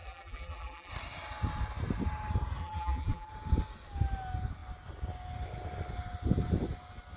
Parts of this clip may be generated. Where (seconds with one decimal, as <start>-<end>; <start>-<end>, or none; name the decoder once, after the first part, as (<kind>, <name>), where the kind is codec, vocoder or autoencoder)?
0.0-0.9 (vocoder, BigVGAN v2); 2.6-3.3